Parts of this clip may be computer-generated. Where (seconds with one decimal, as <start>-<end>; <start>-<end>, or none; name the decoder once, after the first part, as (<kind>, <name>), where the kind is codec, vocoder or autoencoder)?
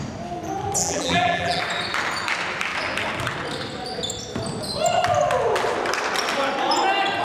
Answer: 0.8-1.6 (vocoder, BigVGAN v2)